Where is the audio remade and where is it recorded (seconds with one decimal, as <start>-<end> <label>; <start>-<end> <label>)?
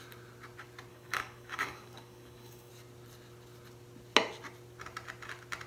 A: 0.0-0.9 recorded; 0.9-2.7 remade; 2.7-5.7 recorded